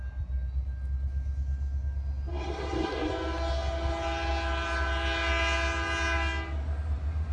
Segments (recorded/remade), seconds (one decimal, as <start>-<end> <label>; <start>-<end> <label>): 0.0-2.3 recorded; 2.3-3.1 remade; 3.1-7.3 recorded